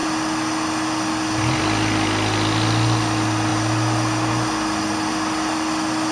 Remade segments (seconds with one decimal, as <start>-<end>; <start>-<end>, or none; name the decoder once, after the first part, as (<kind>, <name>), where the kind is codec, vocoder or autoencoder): none